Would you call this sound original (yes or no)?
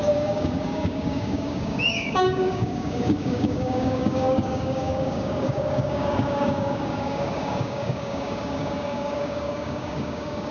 no